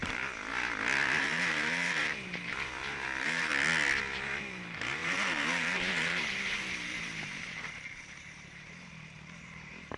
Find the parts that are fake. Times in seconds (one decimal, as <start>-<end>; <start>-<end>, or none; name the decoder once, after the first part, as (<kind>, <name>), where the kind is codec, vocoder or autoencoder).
0.0-0.5 (vocoder, BigVGAN v2); 1.2-3.5; 4.0-10.0